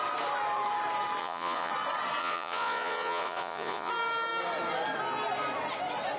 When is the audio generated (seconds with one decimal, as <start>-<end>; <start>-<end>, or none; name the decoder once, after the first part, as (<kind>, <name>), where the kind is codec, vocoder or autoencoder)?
1.2-1.7 (vocoder, Vocos); 2.2-3.9